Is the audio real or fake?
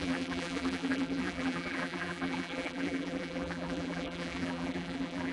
fake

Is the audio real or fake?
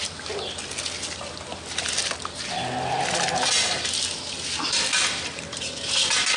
real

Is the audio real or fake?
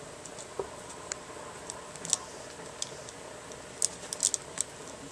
real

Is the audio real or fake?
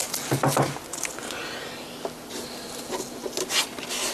real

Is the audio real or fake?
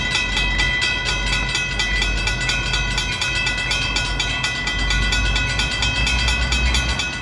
real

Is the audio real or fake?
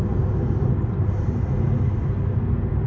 real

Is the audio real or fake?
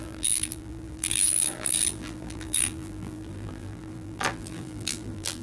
fake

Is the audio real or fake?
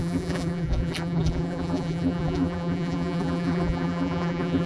fake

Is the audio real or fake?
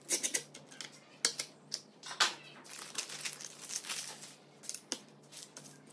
real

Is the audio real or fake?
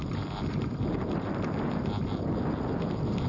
real